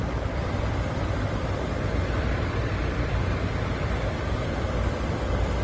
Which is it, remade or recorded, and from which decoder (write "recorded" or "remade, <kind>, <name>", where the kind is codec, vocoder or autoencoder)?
remade, vocoder, BigVGAN v2